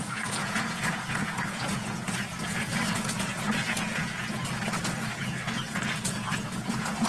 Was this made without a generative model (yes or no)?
no